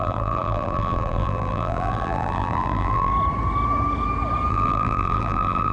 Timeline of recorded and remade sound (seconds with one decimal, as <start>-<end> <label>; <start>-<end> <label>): 0.0-3.1 remade; 3.1-4.5 recorded; 4.5-5.7 remade